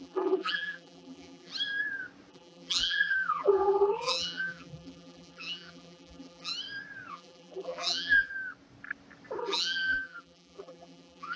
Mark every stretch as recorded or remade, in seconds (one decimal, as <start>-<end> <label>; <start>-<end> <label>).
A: 0.0-1.5 remade; 1.5-2.3 recorded; 2.3-6.5 remade; 6.5-7.1 recorded; 7.1-8.3 remade; 8.3-9.4 recorded; 9.4-11.4 remade